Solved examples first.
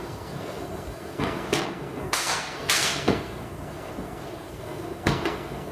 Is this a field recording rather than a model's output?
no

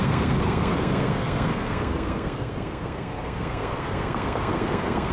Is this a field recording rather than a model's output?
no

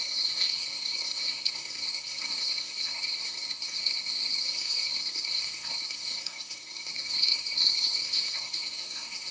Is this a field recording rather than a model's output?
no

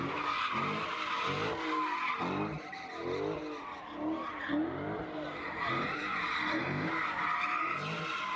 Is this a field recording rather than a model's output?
yes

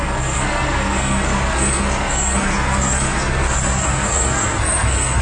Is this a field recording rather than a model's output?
no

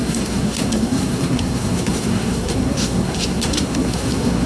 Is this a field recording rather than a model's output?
no